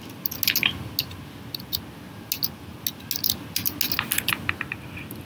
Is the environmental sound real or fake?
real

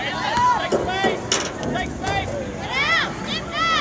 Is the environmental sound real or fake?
real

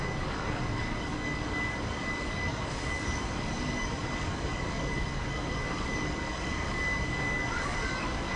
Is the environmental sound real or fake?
fake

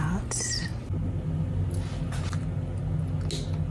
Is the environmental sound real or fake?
real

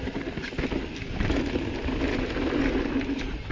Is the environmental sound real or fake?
real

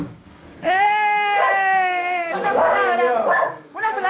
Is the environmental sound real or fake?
fake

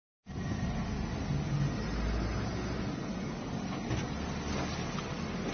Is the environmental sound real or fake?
real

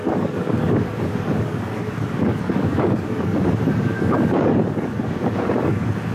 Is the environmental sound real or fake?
fake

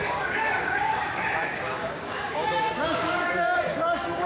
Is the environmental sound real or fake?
fake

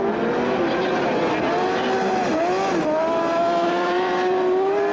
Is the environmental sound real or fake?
real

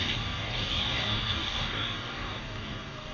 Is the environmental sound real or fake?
fake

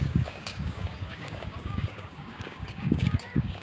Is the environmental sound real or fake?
fake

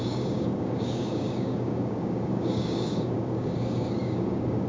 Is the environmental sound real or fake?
fake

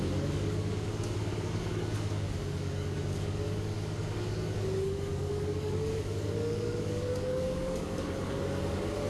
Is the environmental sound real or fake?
fake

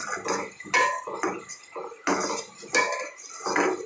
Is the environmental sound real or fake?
real